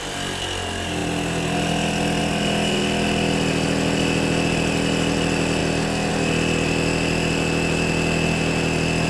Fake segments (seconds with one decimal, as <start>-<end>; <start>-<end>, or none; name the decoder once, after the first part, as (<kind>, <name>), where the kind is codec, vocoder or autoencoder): none